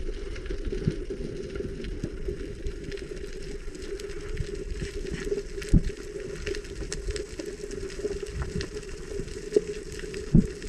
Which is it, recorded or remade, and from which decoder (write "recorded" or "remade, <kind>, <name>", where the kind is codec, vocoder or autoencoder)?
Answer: recorded